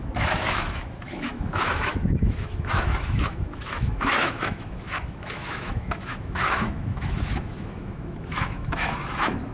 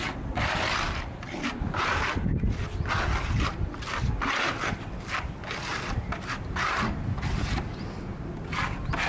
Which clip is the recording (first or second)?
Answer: second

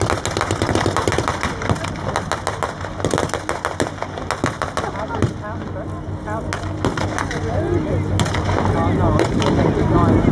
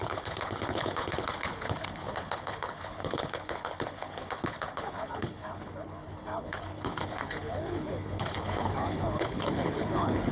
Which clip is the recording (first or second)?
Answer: first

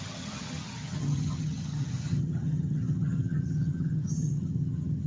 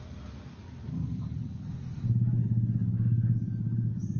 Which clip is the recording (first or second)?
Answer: second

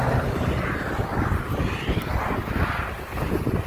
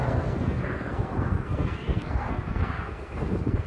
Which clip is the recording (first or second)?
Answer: first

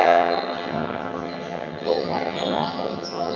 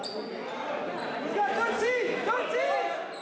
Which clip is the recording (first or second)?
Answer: second